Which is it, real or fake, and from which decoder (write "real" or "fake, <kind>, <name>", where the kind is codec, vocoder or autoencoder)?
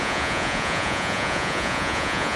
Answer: fake, vocoder, Vocos